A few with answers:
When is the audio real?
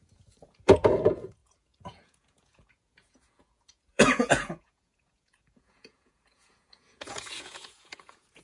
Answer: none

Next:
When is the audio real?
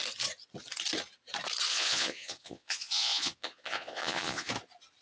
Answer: 0.0-1.7; 4.5-5.0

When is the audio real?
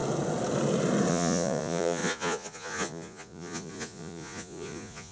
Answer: 0.0-1.1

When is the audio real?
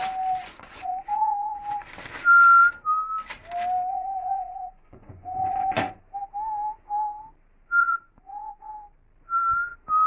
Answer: 0.0-0.4; 1.9-3.9; 6.0-7.8; 8.7-10.1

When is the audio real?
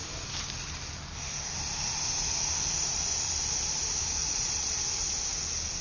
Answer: 0.0-4.2; 4.7-5.8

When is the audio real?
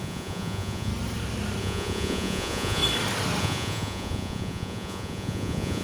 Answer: 0.9-1.6; 2.8-3.4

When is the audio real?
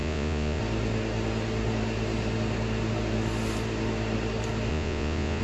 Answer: 0.6-4.7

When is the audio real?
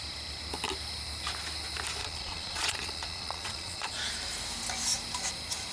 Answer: 0.0-2.0; 4.1-5.7